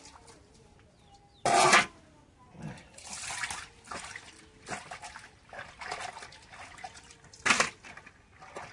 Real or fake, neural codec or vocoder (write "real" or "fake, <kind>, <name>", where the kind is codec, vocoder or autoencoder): real